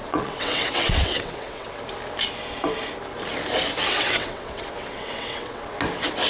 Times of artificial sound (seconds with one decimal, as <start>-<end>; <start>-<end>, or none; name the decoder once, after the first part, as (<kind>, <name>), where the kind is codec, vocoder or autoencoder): 0.0-1.8 (vocoder, WaveNeXt); 3.9-5.6